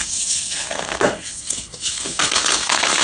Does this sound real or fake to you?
fake